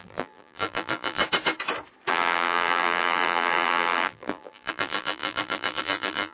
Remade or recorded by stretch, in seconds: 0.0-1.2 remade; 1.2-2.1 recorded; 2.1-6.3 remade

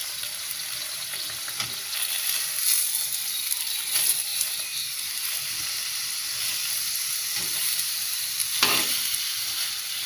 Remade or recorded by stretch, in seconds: 0.0-0.5 remade; 0.5-4.3 recorded; 4.3-5.1 remade; 5.1-7.2 recorded; 7.2-8.3 remade; 8.3-9.0 recorded; 9.0-10.1 remade